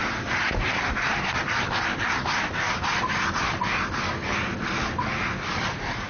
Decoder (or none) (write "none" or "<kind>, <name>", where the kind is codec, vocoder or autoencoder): none